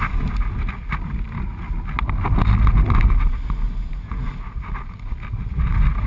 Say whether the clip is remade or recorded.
recorded